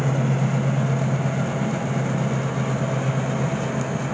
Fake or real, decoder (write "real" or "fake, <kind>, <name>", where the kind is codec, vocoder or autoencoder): real